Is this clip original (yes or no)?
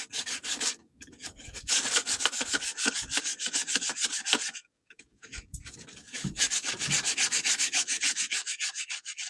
no